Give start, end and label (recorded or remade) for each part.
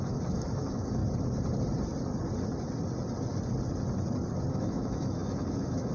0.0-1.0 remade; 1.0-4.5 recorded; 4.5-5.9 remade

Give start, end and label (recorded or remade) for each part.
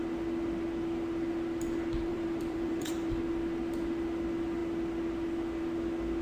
0.0-2.1 recorded; 2.1-3.1 remade; 3.1-6.2 recorded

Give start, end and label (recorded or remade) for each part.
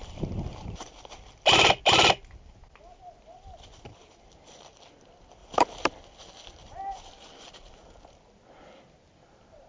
0.0-0.9 remade; 0.9-5.4 recorded; 5.4-6.0 remade; 6.0-6.6 recorded; 6.6-7.7 remade; 7.7-9.7 recorded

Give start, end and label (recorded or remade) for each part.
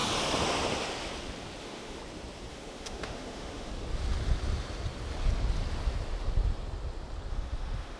0.0-1.6 recorded; 1.6-2.0 remade; 2.0-2.5 recorded; 2.5-3.7 remade; 3.7-7.3 recorded; 7.3-8.0 remade